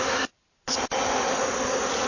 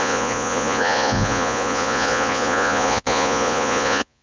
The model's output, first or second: second